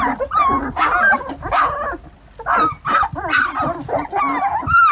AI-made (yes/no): no